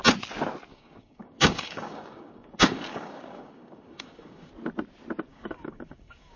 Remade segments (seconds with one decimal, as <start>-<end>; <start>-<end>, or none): 0.7-4.5; 5.3-6.4